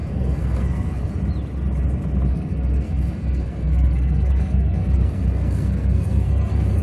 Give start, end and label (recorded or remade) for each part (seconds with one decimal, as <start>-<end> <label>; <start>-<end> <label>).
0.0-1.1 remade; 1.1-2.3 recorded; 2.3-6.8 remade